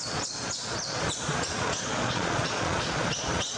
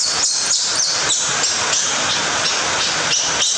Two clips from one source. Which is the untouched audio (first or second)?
second